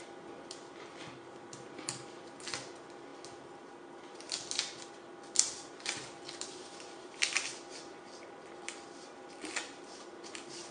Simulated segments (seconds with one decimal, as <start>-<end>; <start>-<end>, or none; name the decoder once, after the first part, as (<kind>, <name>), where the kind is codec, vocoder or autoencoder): none